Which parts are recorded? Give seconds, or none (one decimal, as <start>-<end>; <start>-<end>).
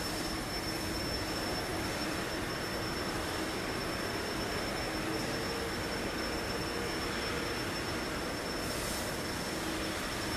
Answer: 0.0-1.7; 2.3-10.4